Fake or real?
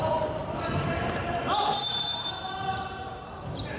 fake